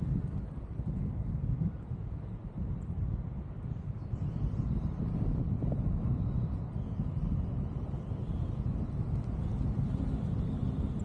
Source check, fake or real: real